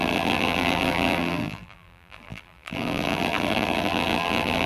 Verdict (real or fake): fake